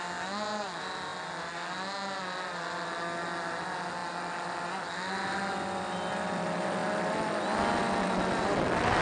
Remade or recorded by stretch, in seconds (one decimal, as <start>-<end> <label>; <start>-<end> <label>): 0.0-9.0 recorded